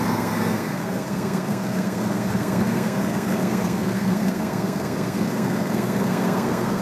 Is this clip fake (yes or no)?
yes